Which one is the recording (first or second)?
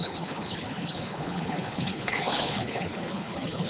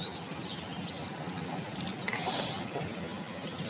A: second